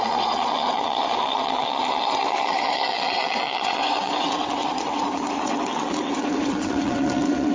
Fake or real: fake